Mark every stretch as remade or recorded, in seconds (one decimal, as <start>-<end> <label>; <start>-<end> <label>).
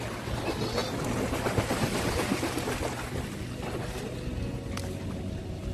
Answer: 0.0-5.7 recorded